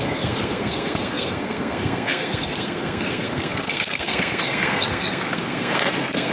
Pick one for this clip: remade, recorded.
remade